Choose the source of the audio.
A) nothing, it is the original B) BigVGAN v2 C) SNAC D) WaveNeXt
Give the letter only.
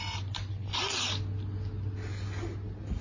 A